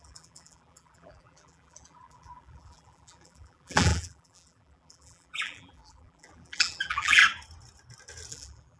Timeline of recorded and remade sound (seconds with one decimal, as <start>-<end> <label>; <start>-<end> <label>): 0.0-7.2 remade; 7.2-8.3 recorded; 8.3-8.8 remade